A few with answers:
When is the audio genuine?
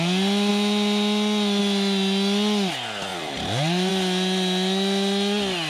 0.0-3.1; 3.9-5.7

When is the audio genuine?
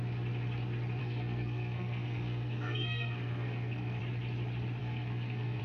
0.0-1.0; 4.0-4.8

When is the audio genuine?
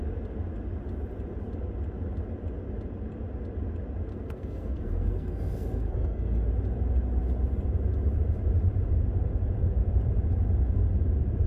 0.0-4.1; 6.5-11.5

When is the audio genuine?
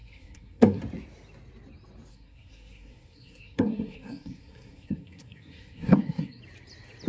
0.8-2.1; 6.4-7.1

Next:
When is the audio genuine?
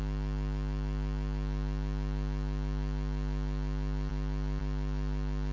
0.0-5.5